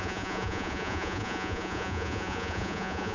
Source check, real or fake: fake